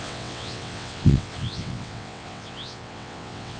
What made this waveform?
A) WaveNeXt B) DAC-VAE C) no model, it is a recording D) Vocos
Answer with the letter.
A